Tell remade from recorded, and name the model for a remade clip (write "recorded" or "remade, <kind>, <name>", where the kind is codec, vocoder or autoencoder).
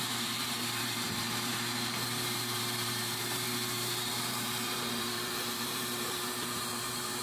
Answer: remade, vocoder, BigVGAN v2